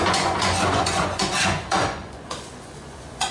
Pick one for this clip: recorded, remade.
remade